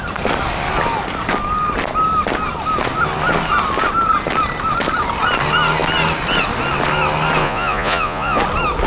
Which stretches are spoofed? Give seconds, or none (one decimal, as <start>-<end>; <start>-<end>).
7.4-8.4